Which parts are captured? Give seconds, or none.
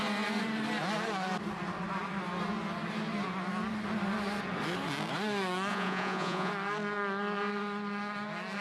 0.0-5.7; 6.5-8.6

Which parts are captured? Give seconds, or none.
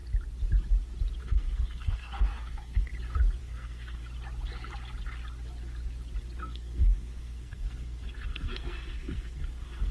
0.0-1.2; 2.9-3.4; 4.0-6.4